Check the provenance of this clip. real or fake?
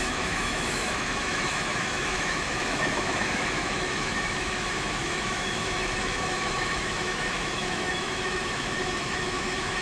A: fake